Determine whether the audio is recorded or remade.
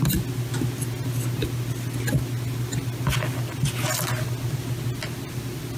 recorded